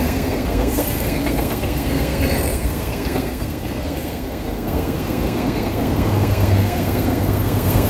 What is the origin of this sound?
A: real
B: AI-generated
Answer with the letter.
B